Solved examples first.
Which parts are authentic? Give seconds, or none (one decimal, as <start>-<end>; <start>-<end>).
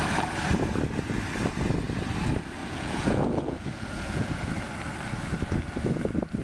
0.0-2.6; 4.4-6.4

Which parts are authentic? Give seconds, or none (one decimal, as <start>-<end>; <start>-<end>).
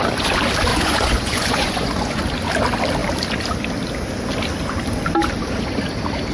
0.0-0.7; 2.2-6.3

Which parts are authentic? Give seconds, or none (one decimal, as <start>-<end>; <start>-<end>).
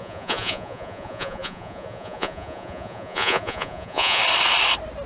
4.2-5.1